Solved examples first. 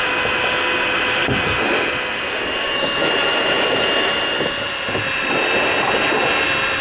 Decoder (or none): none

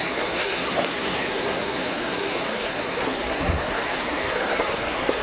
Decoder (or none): codec, SNAC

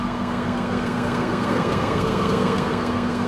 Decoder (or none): codec, SNAC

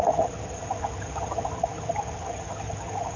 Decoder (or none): vocoder, HiFi-GAN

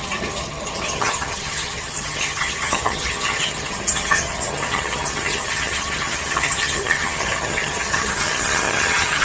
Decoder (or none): vocoder, HiFi-GAN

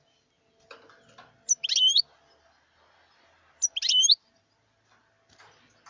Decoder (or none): none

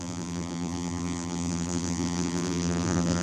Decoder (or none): vocoder, BigVGAN v2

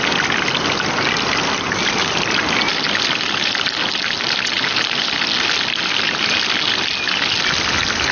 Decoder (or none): none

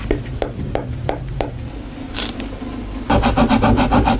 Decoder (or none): none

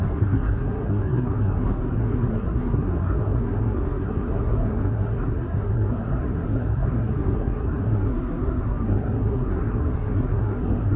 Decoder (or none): codec, SNAC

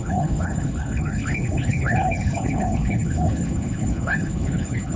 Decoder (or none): codec, HILCodec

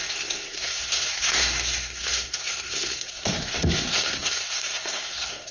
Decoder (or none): codec, SNAC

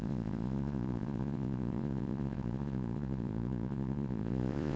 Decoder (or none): vocoder, Vocos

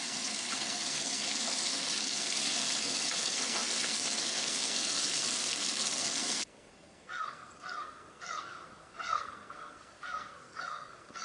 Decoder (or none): codec, SNAC